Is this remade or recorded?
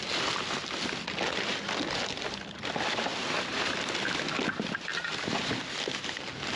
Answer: recorded